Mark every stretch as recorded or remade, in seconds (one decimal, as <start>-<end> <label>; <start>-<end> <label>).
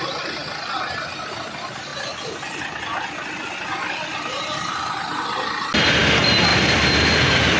0.0-7.6 recorded